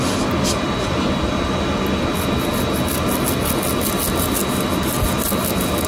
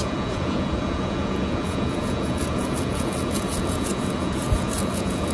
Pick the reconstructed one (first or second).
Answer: second